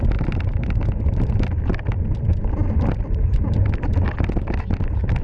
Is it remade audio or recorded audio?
recorded